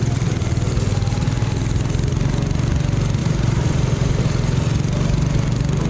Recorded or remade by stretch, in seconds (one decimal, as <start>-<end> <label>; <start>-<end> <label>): 0.0-3.2 recorded; 3.2-4.2 remade; 4.2-5.9 recorded